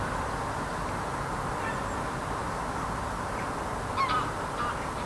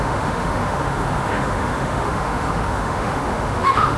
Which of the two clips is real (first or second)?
first